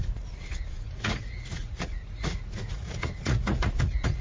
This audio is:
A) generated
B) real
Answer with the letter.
A